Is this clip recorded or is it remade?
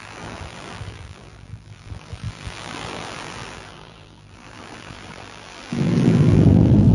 remade